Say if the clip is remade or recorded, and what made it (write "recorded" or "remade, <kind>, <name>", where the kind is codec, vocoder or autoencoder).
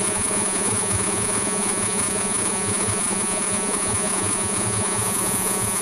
remade, vocoder, Vocos